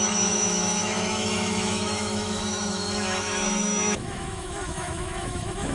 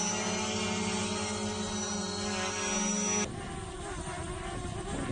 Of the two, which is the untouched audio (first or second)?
second